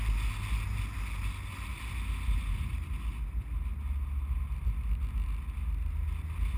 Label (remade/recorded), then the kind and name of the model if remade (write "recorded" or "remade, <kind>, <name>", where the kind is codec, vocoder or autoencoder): recorded